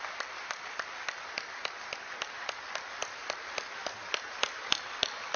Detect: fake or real real